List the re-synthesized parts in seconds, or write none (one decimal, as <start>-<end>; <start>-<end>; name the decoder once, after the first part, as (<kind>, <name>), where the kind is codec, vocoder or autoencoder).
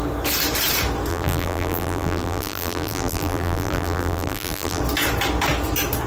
1.1-4.8 (vocoder, BigVGAN v2)